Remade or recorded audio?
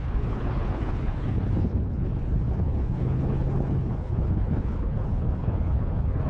remade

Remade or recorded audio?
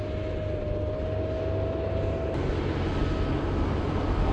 recorded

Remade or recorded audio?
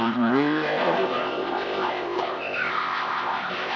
remade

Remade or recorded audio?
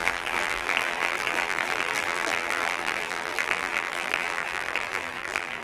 remade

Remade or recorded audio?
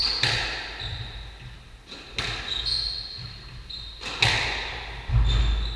recorded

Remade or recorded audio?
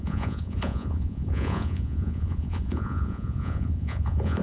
remade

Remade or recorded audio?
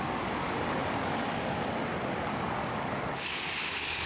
remade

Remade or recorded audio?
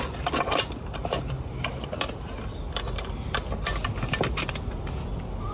recorded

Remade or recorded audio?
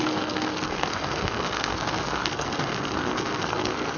remade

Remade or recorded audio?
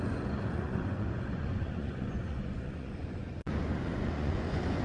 remade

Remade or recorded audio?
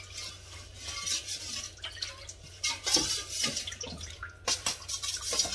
recorded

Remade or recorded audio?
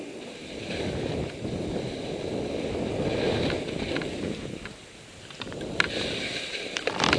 recorded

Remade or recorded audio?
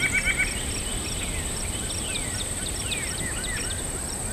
recorded